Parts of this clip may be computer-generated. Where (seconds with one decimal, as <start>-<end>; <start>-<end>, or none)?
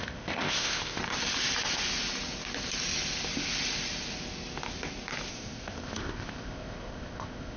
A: 0.0-1.0; 5.3-7.6